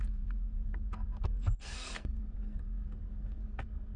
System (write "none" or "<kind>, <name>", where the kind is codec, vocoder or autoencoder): codec, SNAC